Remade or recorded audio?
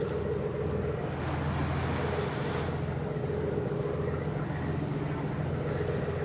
recorded